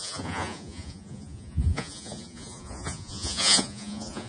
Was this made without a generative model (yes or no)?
no